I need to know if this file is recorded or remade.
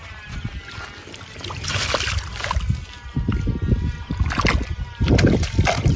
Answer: recorded